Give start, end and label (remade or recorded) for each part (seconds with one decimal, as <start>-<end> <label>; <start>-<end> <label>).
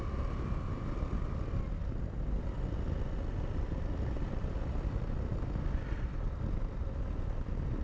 0.0-7.8 recorded